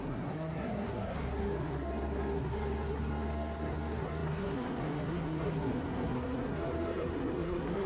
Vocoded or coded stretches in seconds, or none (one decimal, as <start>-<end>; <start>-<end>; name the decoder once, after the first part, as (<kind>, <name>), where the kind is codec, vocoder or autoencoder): 0.0-7.9 (codec, SNAC)